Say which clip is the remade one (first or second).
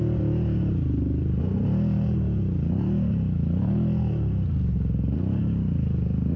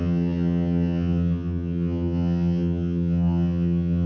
second